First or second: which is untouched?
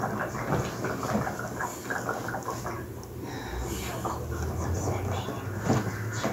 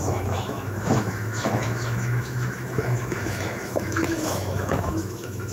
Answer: first